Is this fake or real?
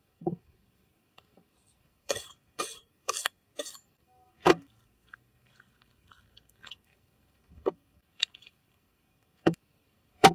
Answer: fake